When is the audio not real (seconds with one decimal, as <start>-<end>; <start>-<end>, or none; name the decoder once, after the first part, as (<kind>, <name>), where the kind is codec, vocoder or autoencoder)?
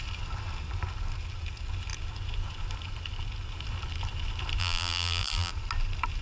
4.6-5.5 (vocoder, BigVGAN v2)